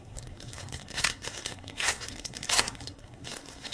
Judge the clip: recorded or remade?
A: remade